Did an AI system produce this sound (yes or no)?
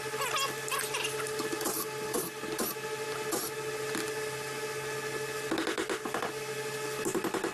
no